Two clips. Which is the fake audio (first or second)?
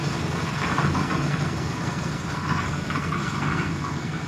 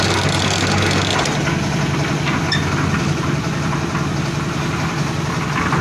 first